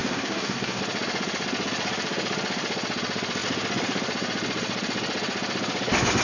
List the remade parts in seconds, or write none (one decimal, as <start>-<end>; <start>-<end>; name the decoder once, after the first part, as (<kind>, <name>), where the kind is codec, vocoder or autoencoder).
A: 0.0-0.8 (codec, DAC)